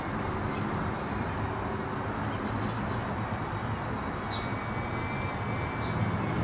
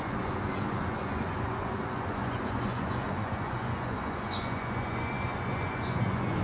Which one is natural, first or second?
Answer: first